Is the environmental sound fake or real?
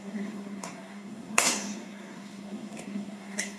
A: fake